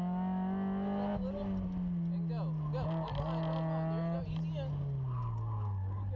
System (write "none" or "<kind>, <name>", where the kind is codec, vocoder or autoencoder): none